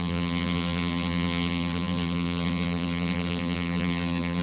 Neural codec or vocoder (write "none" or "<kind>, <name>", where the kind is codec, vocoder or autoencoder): vocoder, BigVGAN v2